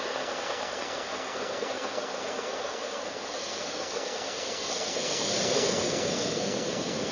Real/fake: fake